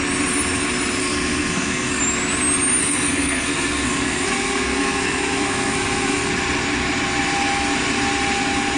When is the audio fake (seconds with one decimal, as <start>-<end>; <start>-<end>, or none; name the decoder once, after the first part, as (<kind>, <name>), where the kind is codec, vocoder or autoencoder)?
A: 1.0-2.0 (codec, SNAC); 2.8-6.3